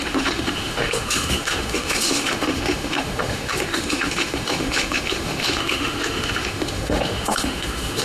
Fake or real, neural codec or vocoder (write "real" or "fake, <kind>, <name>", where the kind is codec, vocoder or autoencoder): fake, autoencoder, DAC-VAE